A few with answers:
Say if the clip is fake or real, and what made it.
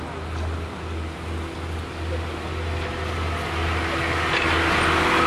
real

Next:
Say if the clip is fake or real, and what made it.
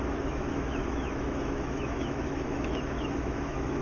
fake, autoencoder, DAC-VAE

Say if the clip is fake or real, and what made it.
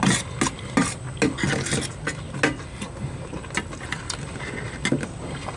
real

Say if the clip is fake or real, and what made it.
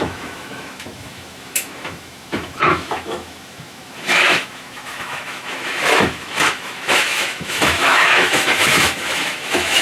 fake, autoencoder, DAC-VAE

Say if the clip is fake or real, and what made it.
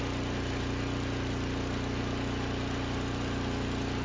real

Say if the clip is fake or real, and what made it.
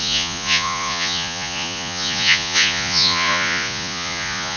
fake, vocoder, Vocos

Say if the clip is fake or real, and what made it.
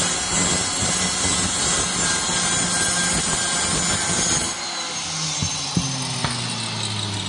real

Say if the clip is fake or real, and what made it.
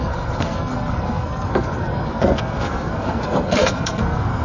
fake, codec, SNAC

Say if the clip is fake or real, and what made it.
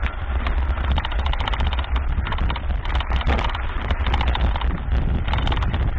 fake, vocoder, BigVGAN v2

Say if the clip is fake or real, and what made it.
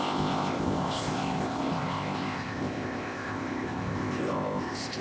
fake, codec, ZipCodec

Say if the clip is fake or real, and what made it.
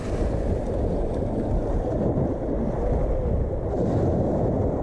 real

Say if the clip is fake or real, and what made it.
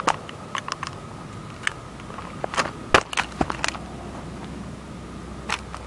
real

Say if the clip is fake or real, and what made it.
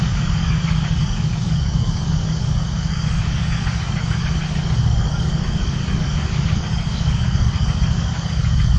fake, codec, DAC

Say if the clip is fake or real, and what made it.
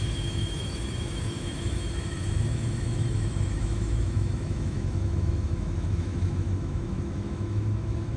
fake, autoencoder, DAC-VAE